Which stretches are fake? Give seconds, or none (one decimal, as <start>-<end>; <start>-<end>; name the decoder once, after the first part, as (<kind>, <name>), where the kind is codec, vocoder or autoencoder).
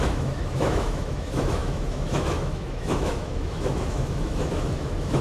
0.0-5.2 (autoencoder, DAC-VAE)